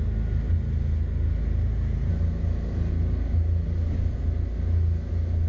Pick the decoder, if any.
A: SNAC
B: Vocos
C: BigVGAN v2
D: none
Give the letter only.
D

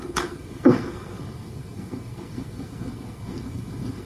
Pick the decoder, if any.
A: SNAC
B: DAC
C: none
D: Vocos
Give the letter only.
A